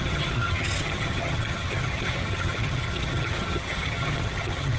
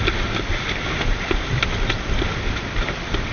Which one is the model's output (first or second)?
first